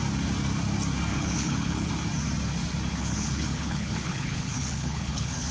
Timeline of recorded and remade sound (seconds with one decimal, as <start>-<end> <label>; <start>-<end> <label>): 0.0-1.1 recorded; 1.1-1.9 remade; 1.9-2.9 recorded; 2.9-5.5 remade